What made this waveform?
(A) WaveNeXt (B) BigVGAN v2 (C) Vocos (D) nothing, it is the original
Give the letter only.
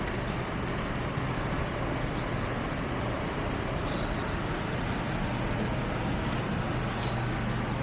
D